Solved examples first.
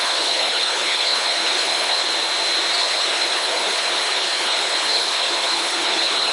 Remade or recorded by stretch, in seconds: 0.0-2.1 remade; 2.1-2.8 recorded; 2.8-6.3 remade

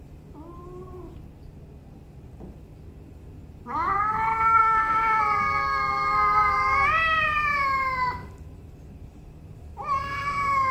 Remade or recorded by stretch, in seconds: 0.0-4.6 recorded; 4.6-5.2 remade; 5.2-10.7 recorded

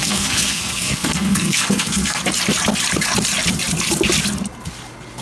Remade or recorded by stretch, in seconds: 0.0-2.2 remade; 2.2-5.2 recorded

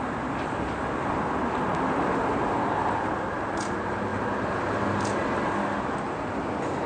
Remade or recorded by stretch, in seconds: 0.0-1.7 recorded; 1.7-2.2 remade; 2.2-6.9 recorded

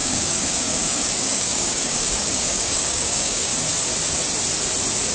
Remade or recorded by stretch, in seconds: 0.0-3.5 remade; 3.5-5.1 recorded

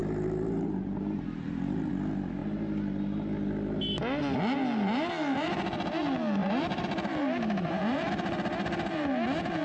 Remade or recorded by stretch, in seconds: 0.0-1.9 remade; 1.9-6.4 recorded; 6.4-8.1 remade; 8.1-9.6 recorded

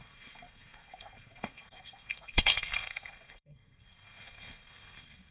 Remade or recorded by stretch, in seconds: 0.0-5.3 remade